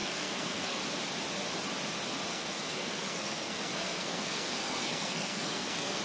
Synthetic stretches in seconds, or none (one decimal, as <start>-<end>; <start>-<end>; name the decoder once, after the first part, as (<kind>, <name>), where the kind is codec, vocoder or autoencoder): 0.0-0.8 (codec, SNAC); 2.3-6.0